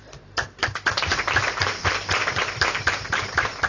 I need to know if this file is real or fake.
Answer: real